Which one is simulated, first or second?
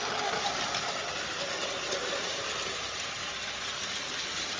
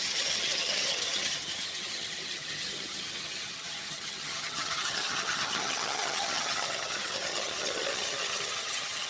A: second